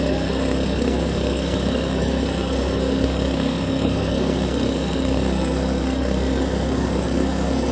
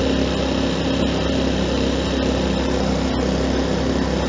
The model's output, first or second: first